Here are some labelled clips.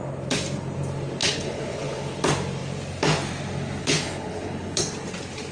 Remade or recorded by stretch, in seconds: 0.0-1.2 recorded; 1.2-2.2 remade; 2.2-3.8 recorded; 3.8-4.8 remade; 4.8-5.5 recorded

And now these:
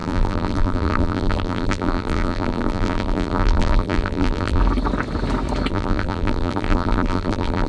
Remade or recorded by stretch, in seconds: 0.0-4.6 remade; 4.6-5.7 recorded; 5.7-7.7 remade

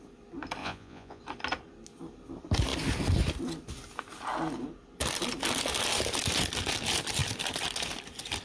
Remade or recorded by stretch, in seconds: 0.0-0.6 recorded; 0.6-1.2 remade; 1.2-8.4 recorded

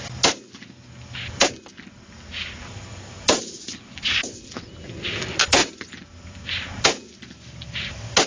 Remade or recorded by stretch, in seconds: 0.0-8.3 recorded